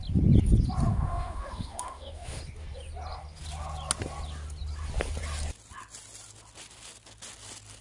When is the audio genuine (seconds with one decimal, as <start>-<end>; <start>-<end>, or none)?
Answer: 0.0-0.9; 2.4-7.8

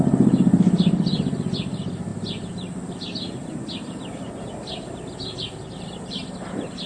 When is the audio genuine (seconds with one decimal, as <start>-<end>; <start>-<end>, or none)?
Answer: 0.0-6.9

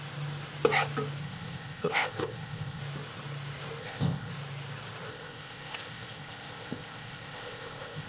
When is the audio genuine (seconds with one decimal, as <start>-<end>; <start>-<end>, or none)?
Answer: 0.0-1.2; 2.8-3.8; 4.3-5.1